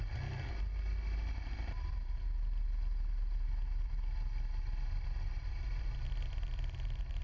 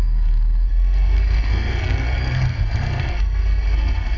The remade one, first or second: second